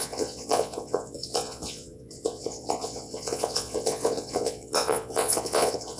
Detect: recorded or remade remade